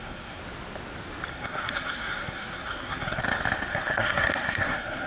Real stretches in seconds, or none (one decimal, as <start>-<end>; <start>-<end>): 0.4-1.3; 3.2-3.7